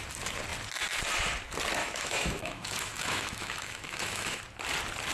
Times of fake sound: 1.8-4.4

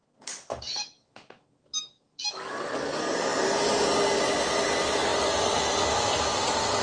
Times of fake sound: 0.0-2.5

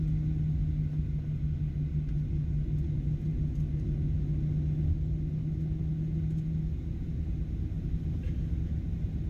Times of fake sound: none

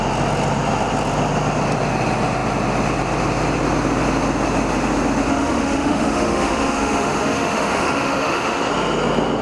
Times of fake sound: 5.3-8.7

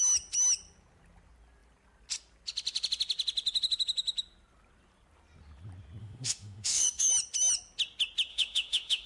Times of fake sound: 6.0-7.1; 8.3-9.1

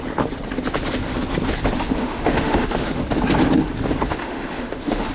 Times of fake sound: 2.0-3.0; 4.2-5.1

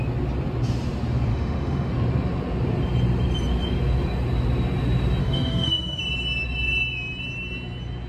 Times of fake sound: 1.3-1.9; 5.2-6.0